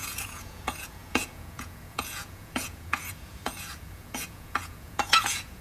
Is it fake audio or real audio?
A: fake